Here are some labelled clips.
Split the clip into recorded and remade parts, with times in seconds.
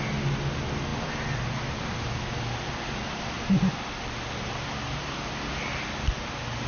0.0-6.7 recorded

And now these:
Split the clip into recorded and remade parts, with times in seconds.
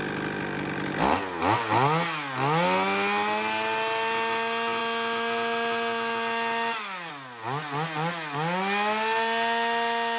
0.0-10.2 recorded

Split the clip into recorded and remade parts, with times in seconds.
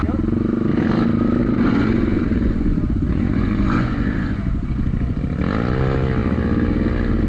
0.0-1.4 recorded; 1.4-5.2 remade; 5.2-7.3 recorded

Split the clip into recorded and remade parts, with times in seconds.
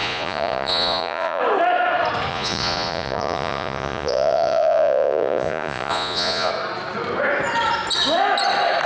0.0-1.4 remade; 1.4-2.3 recorded; 2.3-6.5 remade; 6.5-8.9 recorded